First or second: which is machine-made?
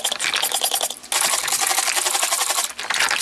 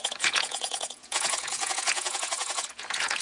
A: second